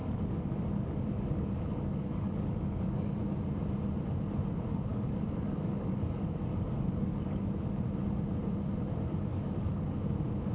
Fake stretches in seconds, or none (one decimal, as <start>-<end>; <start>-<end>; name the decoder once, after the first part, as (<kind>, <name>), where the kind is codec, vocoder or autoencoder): 0.0-3.2 (codec, DAC); 4.9-7.8; 9.3-10.0